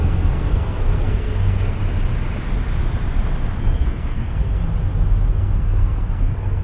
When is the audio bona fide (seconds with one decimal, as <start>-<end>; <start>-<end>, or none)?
1.8-3.6; 4.6-5.3